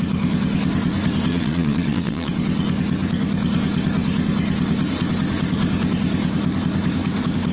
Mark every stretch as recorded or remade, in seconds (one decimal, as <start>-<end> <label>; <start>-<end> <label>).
0.0-1.3 recorded; 1.3-2.3 remade; 2.3-7.5 recorded